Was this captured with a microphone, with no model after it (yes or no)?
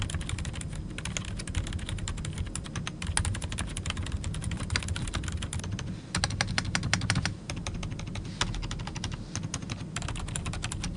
yes